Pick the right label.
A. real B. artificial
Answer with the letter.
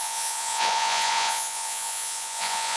B